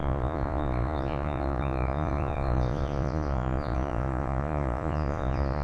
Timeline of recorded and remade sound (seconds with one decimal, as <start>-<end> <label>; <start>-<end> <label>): 0.0-5.6 remade